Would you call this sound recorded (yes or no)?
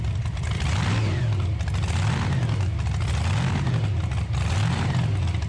yes